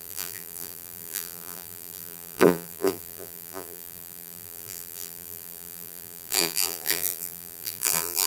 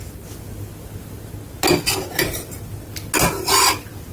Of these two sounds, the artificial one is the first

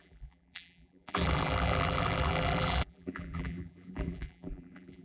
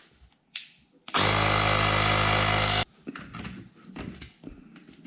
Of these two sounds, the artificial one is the first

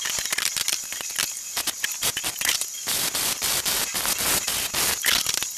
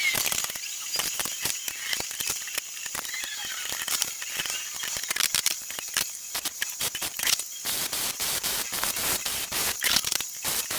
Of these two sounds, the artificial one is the second